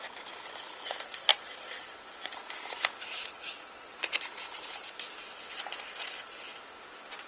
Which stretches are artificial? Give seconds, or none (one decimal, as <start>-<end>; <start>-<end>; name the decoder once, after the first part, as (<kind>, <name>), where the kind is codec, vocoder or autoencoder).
1.3-1.9 (vocoder, Vocos); 3.2-4.0